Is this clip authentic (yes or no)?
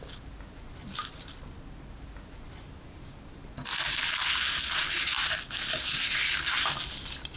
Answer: yes